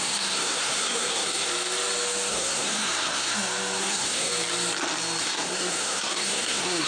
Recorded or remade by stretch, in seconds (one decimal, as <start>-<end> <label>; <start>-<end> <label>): 0.0-1.5 remade; 1.5-2.3 recorded; 2.3-3.3 remade; 3.3-3.8 recorded; 3.8-4.3 remade; 4.3-5.2 recorded; 5.2-6.9 remade